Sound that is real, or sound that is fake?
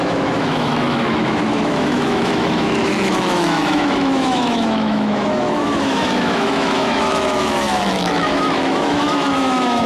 fake